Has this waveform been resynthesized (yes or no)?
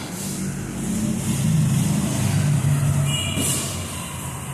no